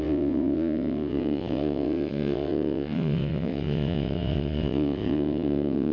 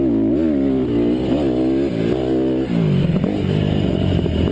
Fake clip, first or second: first